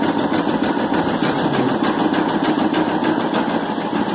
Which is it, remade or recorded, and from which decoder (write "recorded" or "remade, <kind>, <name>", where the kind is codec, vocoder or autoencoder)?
recorded